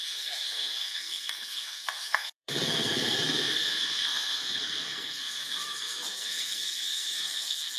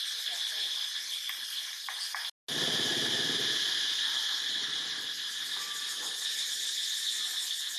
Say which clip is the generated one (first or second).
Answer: first